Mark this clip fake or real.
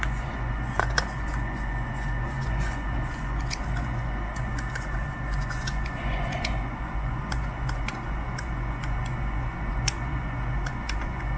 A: fake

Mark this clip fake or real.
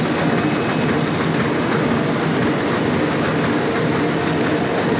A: real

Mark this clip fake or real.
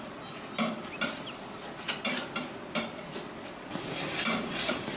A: real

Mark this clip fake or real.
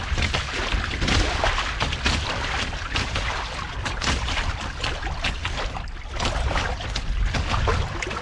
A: real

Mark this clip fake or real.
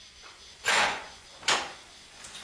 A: fake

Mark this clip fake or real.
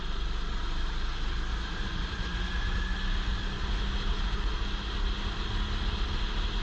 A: real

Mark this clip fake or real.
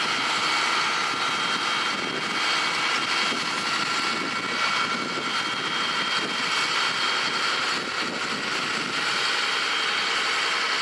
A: real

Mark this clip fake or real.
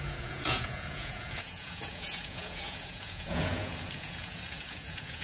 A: fake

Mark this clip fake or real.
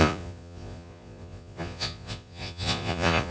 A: fake